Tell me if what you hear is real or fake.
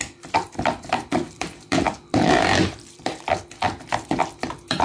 fake